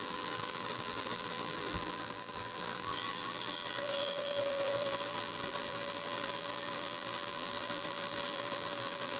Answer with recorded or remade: remade